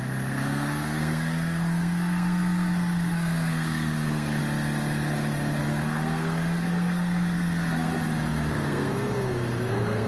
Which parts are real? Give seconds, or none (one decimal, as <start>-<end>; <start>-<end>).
4.4-5.6; 7.9-8.5

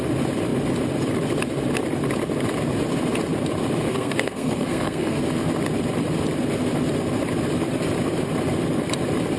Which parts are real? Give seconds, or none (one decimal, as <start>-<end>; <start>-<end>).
0.0-3.9; 5.2-9.4